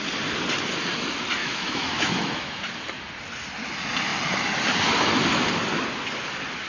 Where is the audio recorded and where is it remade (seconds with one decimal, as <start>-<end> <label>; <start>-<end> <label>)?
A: 0.0-1.4 recorded; 1.4-2.6 remade; 2.6-6.7 recorded

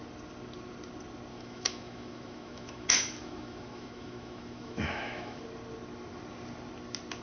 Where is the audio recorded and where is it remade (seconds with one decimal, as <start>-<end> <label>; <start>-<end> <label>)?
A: 0.0-1.3 recorded; 1.3-5.4 remade; 5.4-7.2 recorded

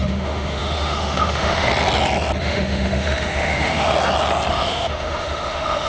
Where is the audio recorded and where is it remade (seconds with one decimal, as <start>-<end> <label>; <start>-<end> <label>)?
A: 0.0-1.7 remade; 1.7-2.4 recorded; 2.4-3.9 remade; 3.9-4.5 recorded; 4.5-5.9 remade